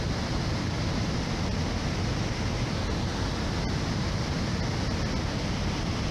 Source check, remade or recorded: recorded